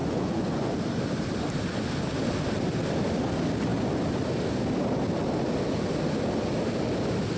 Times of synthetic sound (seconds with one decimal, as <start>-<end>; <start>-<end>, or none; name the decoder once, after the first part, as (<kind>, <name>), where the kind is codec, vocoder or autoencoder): 0.0-0.7 (vocoder, Vocos)